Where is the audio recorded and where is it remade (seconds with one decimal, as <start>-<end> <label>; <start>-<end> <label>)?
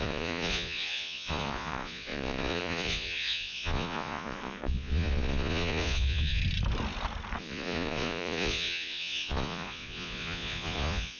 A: 0.0-6.4 remade; 6.4-7.4 recorded; 7.4-11.2 remade